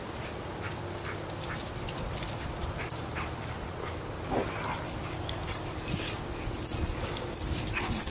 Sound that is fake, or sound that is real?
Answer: real